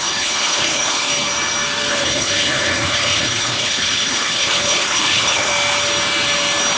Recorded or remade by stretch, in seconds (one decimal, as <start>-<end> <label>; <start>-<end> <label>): 0.0-1.1 remade; 1.1-1.9 recorded; 1.9-5.5 remade; 5.5-6.8 recorded